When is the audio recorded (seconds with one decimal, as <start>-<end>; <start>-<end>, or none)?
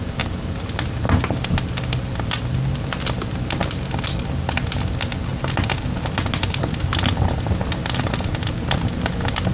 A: 0.0-9.5